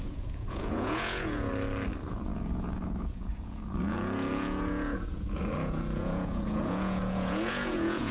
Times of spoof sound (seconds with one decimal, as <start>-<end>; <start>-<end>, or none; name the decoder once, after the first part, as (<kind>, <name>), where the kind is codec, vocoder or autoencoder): 0.0-1.5 (vocoder, Vocos); 2.1-8.1